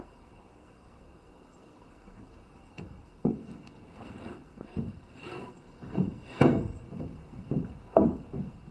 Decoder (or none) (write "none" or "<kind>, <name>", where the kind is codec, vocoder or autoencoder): codec, SNAC